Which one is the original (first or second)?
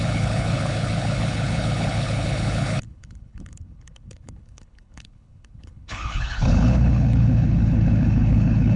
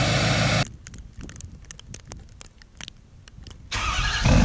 second